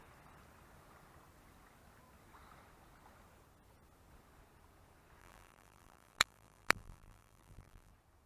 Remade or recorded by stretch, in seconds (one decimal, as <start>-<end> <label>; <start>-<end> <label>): 0.0-5.2 recorded; 5.2-7.9 remade; 7.9-8.3 recorded